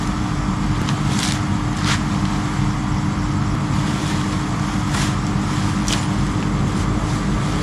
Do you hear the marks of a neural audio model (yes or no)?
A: no